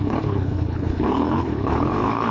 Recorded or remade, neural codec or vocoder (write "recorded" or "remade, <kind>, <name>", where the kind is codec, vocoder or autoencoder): remade, codec, HILCodec